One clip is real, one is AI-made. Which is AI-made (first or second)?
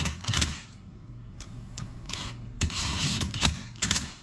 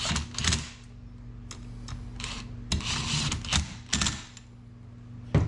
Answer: first